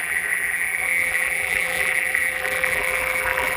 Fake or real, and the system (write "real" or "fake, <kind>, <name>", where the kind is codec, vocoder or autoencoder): fake, vocoder, BigVGAN v2